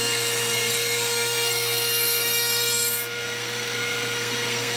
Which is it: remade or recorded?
remade